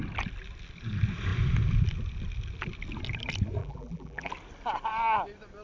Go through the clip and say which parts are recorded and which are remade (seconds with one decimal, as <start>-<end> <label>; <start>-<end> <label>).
0.0-3.6 recorded; 3.6-4.3 remade; 4.3-5.6 recorded